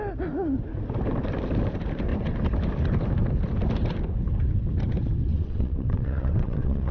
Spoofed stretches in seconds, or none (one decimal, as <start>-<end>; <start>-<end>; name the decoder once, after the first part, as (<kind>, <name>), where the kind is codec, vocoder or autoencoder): 5.3-6.9 (vocoder, WaveNeXt)

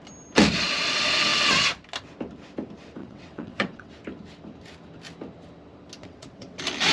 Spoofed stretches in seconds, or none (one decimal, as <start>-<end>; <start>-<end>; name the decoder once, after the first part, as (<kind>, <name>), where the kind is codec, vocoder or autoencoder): 3.0-3.9 (vocoder, WaveNeXt); 6.0-6.5